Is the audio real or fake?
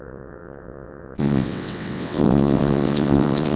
fake